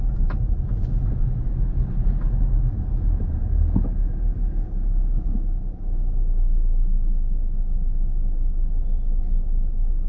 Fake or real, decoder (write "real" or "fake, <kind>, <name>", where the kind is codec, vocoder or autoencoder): real